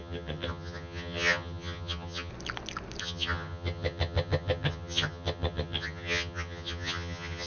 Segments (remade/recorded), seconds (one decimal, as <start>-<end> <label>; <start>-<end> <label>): 0.0-2.3 remade; 2.3-3.0 recorded; 3.0-7.5 remade